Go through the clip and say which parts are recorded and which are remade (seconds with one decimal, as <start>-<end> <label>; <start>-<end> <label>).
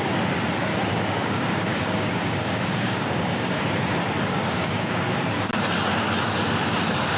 0.0-0.9 recorded; 0.9-3.6 remade; 3.6-4.3 recorded; 4.3-5.2 remade; 5.2-7.2 recorded